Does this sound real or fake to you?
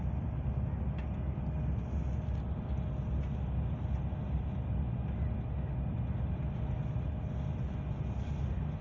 real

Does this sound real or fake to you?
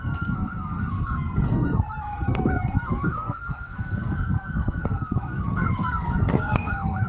fake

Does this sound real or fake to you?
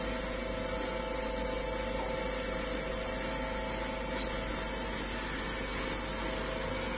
real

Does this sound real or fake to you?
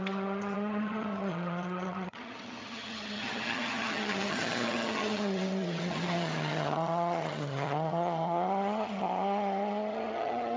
fake